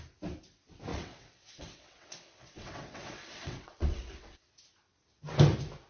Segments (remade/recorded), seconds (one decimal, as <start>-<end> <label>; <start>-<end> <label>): 0.0-0.9 recorded; 0.9-4.4 remade; 4.4-5.9 recorded